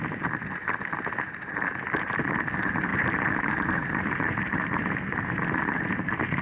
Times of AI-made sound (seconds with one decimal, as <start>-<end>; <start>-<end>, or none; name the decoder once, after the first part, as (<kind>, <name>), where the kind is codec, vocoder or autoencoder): none